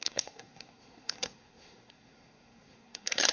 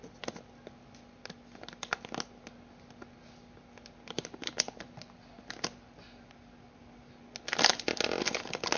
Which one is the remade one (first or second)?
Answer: first